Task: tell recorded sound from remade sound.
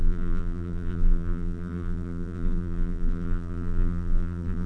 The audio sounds remade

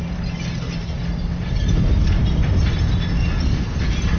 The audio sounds recorded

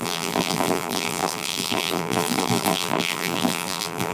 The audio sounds remade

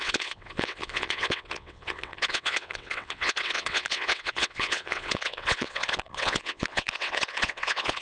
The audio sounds remade